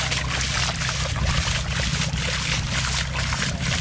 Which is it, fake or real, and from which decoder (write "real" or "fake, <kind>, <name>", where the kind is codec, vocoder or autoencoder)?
real